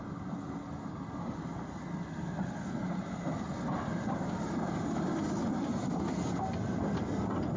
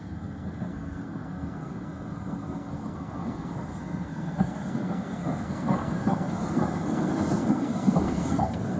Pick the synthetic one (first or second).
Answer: second